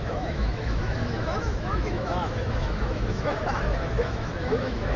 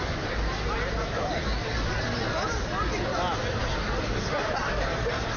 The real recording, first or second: second